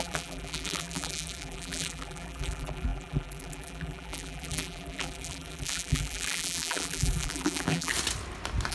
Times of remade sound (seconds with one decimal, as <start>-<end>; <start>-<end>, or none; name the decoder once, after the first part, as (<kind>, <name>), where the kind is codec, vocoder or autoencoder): 0.0-7.9 (vocoder, BigVGAN v2)